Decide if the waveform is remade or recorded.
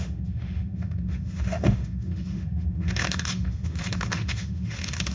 remade